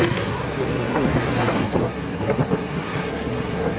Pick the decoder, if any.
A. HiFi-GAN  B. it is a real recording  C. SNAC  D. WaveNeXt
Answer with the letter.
C